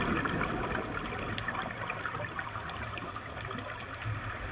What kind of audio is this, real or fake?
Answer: real